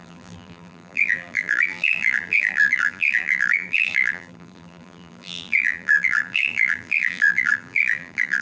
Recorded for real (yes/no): no